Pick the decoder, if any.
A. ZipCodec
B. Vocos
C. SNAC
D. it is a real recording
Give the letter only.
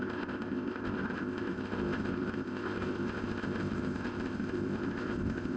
A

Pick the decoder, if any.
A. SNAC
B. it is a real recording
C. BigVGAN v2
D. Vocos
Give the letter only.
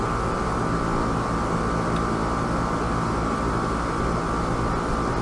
B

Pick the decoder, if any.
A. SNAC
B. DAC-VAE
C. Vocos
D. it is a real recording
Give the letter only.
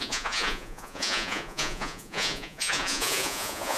C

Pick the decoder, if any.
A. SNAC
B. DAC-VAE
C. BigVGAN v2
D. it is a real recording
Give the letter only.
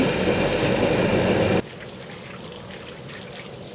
D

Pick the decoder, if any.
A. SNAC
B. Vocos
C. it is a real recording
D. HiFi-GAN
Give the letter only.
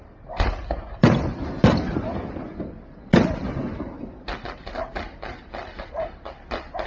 C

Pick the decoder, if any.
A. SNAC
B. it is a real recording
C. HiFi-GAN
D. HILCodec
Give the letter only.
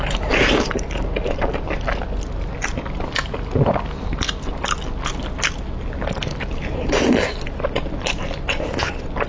B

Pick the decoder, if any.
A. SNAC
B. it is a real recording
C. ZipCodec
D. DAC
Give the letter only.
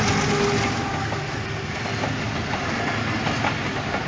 B